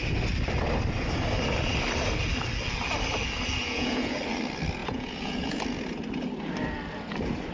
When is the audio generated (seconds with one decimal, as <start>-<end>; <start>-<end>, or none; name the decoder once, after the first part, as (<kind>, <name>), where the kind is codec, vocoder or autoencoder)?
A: 3.6-4.2 (vocoder, Vocos); 4.8-5.6